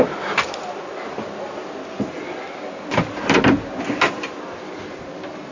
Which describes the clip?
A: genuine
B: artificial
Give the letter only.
A